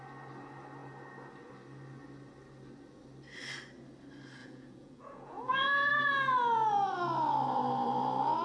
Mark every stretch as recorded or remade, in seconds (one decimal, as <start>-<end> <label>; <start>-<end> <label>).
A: 0.0-4.4 recorded; 4.4-5.9 remade; 5.9-8.4 recorded